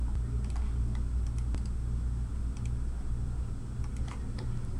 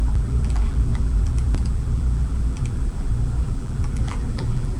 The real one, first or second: first